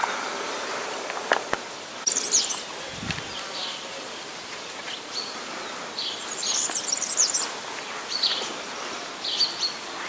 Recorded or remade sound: remade